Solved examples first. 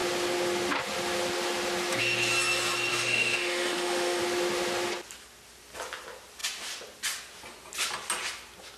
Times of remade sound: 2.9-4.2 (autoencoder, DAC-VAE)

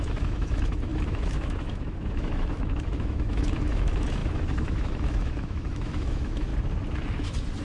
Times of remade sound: 0.0-6.5 (autoencoder, DAC-VAE)

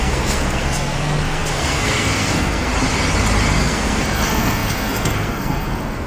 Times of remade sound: 0.0-2.7 (codec, SNAC); 3.6-6.1

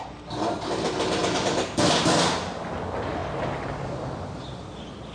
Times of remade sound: 1.2-1.8 (vocoder, BigVGAN v2)

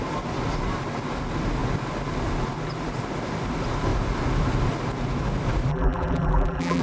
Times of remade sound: 5.7-6.8 (vocoder, BigVGAN v2)

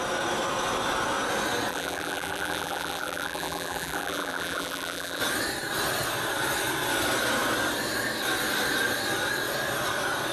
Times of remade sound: 1.7-5.2 (vocoder, BigVGAN v2)